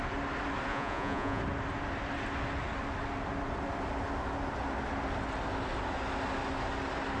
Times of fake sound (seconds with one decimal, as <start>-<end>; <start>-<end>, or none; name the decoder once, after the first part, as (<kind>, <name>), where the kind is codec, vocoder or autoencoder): 0.7-1.4 (vocoder, Vocos)